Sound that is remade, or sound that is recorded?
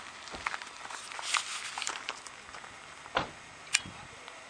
recorded